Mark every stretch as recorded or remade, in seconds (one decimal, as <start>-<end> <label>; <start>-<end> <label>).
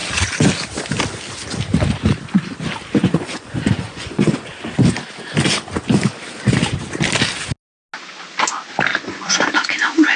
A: 0.0-3.0 recorded; 3.0-4.5 remade; 4.5-8.9 recorded; 8.9-9.5 remade; 9.5-10.2 recorded